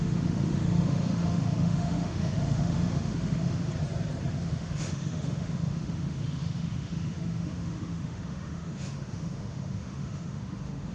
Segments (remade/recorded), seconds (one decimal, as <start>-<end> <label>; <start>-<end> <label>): 0.0-3.7 remade; 3.7-4.3 recorded; 4.3-10.9 remade